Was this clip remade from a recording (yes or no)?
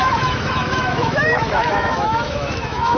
yes